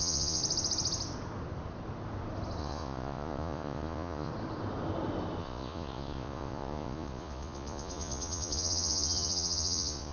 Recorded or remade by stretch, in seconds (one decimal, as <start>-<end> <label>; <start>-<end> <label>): 0.0-0.4 remade; 0.4-2.6 recorded; 2.6-4.3 remade; 4.3-5.4 recorded; 5.4-10.1 remade